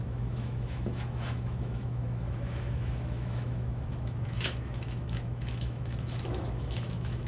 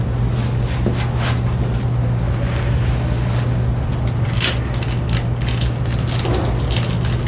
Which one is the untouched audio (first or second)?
second